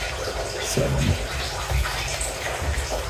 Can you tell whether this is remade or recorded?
recorded